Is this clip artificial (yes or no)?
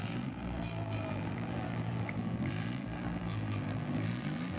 yes